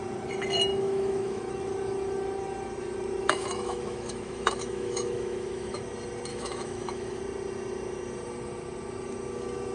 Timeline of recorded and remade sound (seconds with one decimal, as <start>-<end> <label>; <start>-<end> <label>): 0.0-0.7 recorded; 0.7-1.5 remade; 1.5-3.2 recorded; 3.2-5.8 remade; 5.8-6.3 recorded; 6.3-7.2 remade; 7.2-9.7 recorded